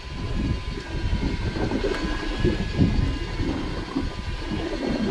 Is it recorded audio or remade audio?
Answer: recorded